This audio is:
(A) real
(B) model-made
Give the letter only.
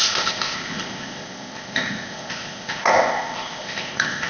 B